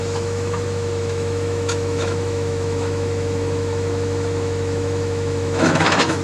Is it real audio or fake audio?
fake